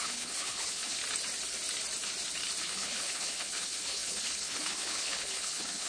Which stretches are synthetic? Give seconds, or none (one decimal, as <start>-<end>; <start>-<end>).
0.0-1.0; 2.6-5.9